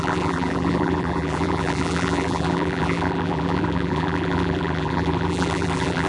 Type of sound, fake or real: fake